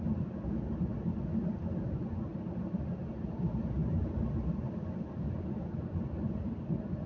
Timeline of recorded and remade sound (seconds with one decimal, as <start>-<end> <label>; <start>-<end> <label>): 0.0-7.1 recorded